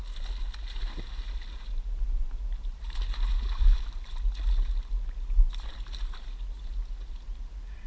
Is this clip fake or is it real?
real